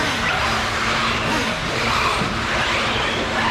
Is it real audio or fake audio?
fake